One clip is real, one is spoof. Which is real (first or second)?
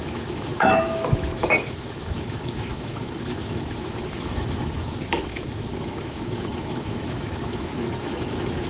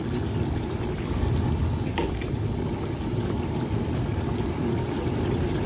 second